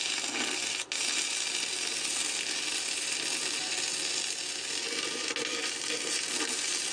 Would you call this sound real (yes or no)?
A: yes